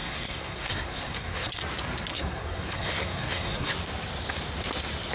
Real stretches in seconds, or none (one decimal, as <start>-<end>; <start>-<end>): 1.6-2.1; 3.7-5.1